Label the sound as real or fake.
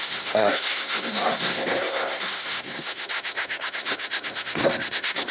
fake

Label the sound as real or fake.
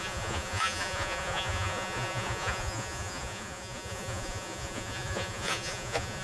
fake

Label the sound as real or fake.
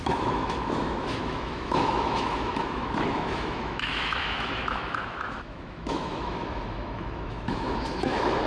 fake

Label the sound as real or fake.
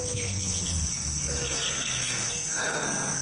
fake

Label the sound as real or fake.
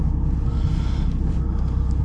real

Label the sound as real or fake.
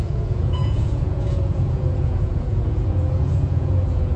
fake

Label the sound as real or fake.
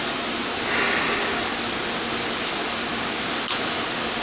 real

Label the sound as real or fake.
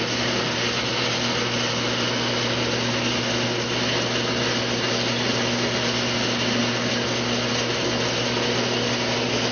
real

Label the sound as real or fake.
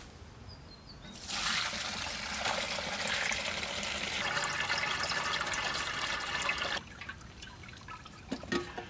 real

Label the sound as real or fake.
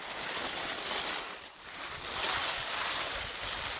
real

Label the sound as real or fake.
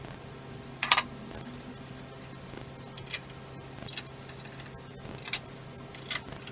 real